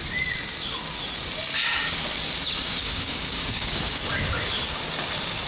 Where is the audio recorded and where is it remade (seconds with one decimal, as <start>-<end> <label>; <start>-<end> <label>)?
0.0-2.7 recorded; 2.7-4.0 remade; 4.0-5.5 recorded